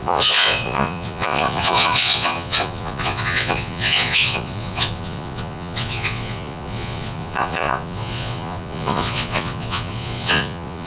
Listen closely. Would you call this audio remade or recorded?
remade